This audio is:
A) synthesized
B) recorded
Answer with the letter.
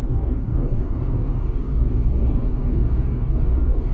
A